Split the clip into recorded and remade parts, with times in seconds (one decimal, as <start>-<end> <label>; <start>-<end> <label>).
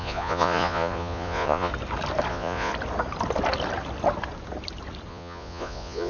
0.0-1.7 remade; 1.7-2.3 recorded; 2.3-2.7 remade; 2.7-5.1 recorded; 5.1-6.1 remade